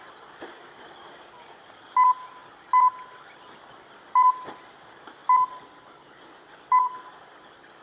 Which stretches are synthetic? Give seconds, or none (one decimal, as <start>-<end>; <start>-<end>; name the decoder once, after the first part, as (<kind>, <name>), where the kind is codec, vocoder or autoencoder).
none